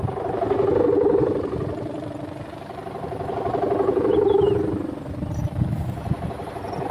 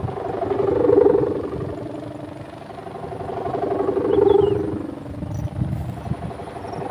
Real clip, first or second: second